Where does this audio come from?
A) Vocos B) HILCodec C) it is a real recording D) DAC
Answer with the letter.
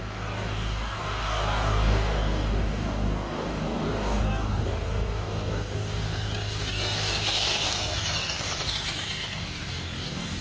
D